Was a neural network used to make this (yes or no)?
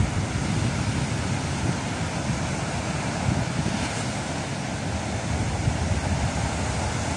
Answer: no